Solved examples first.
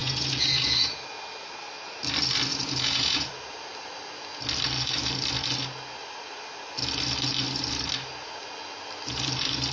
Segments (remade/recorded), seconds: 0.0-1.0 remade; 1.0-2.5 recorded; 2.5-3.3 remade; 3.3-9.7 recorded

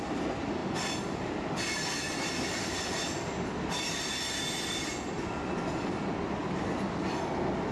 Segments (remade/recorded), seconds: 0.0-7.7 recorded

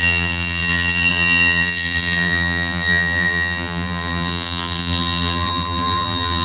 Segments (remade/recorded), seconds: 0.0-6.4 remade